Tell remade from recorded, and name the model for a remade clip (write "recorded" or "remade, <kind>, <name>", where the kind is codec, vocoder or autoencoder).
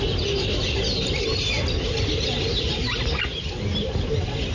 recorded